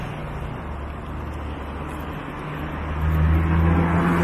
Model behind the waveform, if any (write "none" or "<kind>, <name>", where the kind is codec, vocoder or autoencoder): none